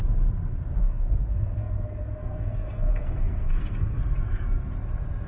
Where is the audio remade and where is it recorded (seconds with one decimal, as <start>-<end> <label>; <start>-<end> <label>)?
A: 0.0-0.8 recorded; 0.8-4.0 remade; 4.0-5.3 recorded